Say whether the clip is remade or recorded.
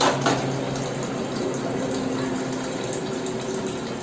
recorded